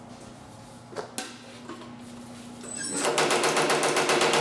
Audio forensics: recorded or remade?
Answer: recorded